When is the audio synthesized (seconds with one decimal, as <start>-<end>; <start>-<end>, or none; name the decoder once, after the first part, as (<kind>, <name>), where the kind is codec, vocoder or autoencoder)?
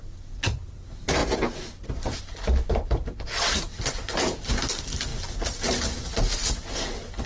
0.0-1.2 (vocoder, BigVGAN v2); 1.8-5.1; 6.2-7.3